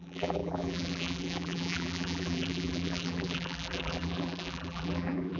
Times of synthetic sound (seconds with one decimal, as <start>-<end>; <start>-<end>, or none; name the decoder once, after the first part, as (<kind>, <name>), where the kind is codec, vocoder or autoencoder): 0.0-5.4 (vocoder, BigVGAN v2)